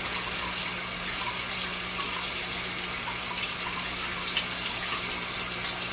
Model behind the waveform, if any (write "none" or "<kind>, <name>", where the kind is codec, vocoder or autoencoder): none